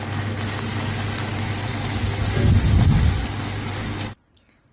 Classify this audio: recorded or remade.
recorded